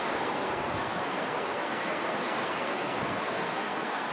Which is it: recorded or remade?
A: remade